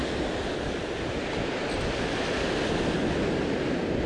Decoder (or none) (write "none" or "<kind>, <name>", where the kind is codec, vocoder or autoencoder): none